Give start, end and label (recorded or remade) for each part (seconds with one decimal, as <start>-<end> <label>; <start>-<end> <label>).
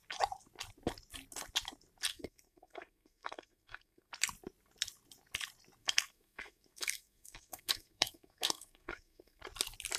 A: 0.0-2.1 recorded; 2.1-4.1 remade; 4.1-5.8 recorded; 5.8-9.4 remade; 9.4-10.0 recorded